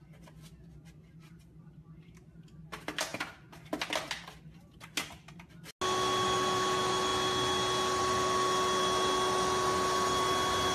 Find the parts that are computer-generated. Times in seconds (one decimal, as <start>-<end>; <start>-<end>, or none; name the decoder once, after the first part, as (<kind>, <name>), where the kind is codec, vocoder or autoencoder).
none